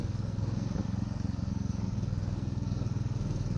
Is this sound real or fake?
fake